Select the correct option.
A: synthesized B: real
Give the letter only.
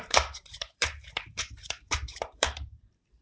A